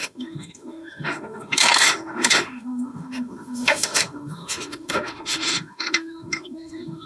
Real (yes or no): no